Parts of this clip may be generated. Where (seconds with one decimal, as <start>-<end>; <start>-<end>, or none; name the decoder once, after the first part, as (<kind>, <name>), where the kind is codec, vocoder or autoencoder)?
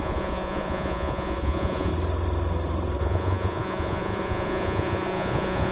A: 0.0-1.9 (vocoder, Vocos); 3.0-5.7